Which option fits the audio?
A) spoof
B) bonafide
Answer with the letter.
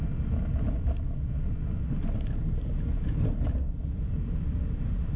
B